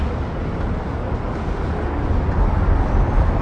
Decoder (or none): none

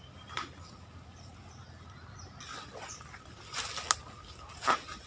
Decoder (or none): none